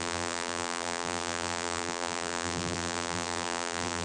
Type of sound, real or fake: fake